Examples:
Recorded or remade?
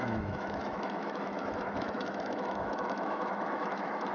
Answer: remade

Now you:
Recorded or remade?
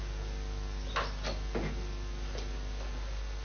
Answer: recorded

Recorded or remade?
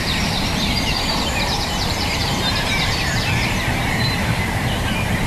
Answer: remade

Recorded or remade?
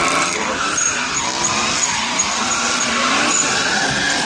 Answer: recorded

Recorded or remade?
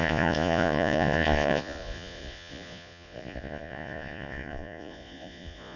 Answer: remade